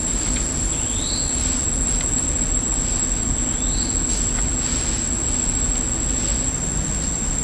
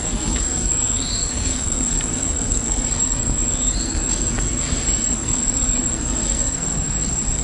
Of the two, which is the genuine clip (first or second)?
first